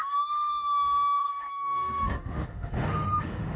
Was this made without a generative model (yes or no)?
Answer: no